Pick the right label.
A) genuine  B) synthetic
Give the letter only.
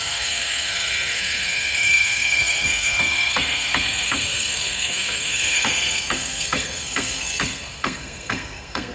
B